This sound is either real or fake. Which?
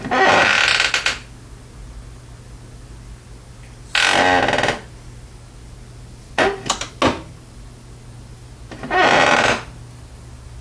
real